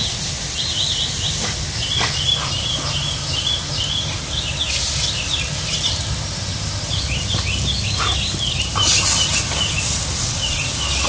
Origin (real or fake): real